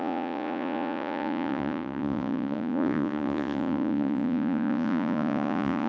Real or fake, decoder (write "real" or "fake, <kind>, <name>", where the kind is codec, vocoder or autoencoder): fake, vocoder, Vocos